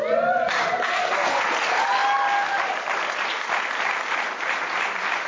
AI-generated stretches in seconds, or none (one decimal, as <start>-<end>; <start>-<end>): 0.9-1.4